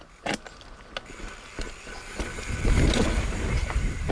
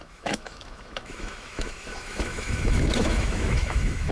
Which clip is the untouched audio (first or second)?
first